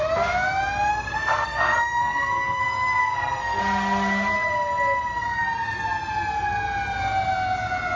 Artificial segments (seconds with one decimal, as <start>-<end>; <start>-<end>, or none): 0.9-2.6; 3.0-3.6